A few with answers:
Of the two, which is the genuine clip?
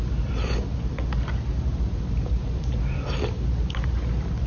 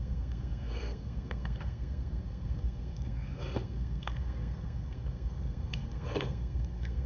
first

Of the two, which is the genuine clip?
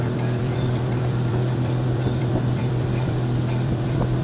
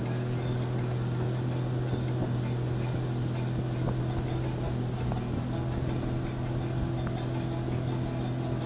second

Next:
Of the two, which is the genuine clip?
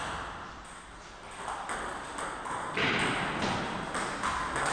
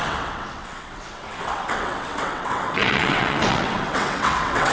first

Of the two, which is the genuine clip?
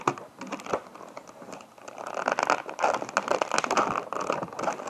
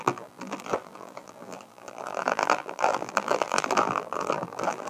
first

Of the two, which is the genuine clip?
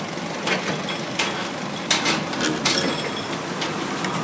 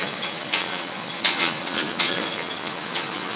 first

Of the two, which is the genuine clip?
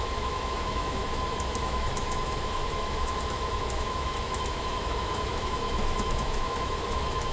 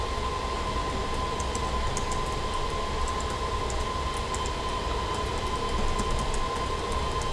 second